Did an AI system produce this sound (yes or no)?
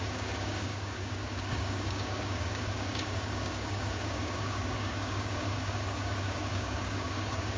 yes